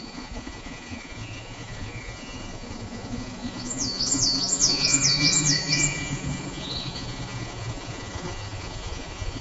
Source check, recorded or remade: remade